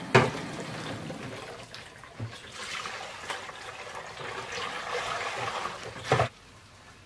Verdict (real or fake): real